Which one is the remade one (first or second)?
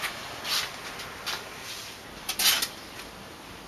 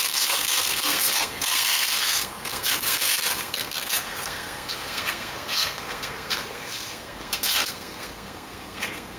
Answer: second